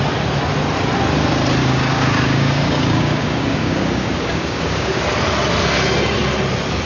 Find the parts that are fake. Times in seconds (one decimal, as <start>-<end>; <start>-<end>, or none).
1.6-5.0